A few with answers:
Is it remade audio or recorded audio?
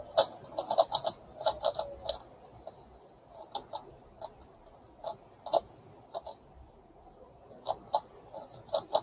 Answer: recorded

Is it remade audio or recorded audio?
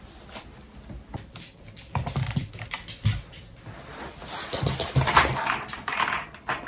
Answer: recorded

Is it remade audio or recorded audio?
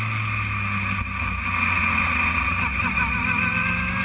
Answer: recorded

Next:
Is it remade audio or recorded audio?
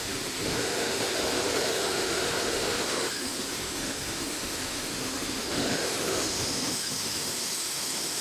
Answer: remade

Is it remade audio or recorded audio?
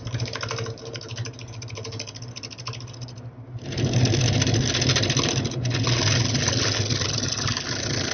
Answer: recorded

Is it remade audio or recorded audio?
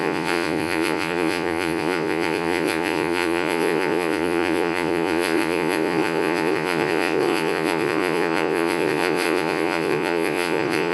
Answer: remade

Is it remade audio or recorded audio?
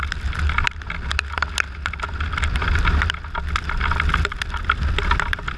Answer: recorded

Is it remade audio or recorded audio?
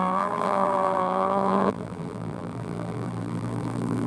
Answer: remade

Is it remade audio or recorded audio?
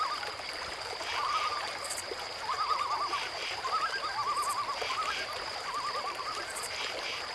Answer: remade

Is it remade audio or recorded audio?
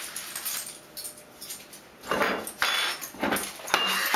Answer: recorded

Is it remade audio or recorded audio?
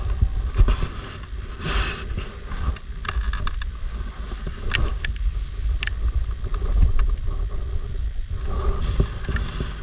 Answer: recorded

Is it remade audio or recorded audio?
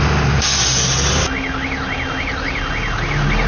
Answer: recorded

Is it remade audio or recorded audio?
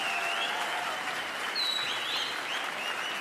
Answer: recorded